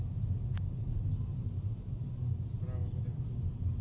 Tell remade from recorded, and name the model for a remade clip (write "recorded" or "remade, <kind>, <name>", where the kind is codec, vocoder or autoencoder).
recorded